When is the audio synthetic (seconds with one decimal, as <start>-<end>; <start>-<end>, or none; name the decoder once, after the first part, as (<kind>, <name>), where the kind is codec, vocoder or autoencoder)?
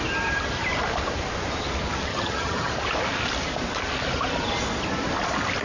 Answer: 2.1-2.7 (vocoder, HiFi-GAN)